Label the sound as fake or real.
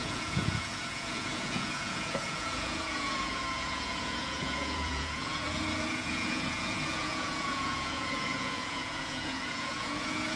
fake